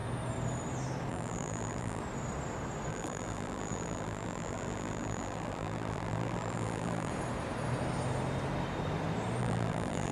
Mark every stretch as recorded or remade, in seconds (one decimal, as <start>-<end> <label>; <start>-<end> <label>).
0.0-1.1 recorded; 1.1-2.0 remade; 2.0-2.9 recorded; 2.9-7.1 remade; 7.1-9.4 recorded; 9.4-10.1 remade